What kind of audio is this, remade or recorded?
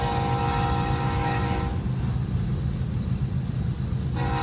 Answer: recorded